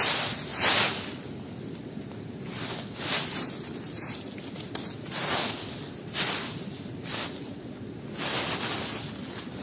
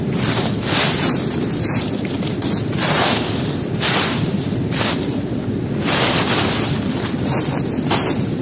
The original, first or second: first